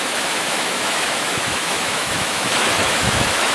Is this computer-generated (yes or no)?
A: yes